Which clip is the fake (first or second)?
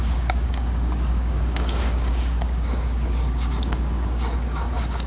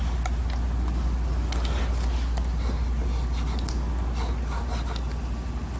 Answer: first